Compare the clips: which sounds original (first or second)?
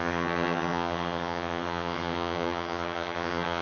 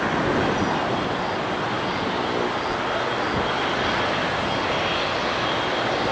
second